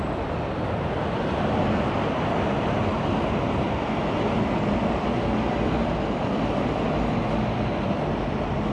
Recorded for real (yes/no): yes